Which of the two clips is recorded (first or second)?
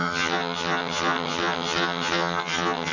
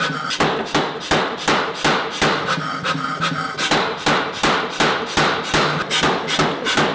second